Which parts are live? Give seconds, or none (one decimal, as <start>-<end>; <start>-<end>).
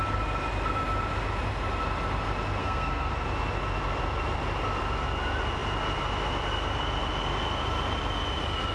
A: 0.0-2.6; 3.1-8.7